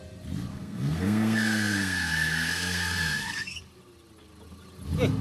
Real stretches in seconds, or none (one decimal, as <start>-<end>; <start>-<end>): 0.0-0.5; 3.6-5.2